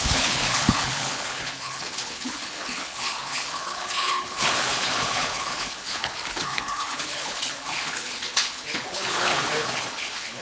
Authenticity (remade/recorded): remade